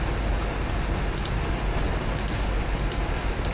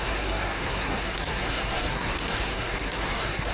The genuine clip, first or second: first